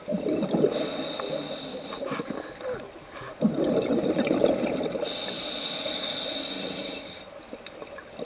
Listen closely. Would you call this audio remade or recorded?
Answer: recorded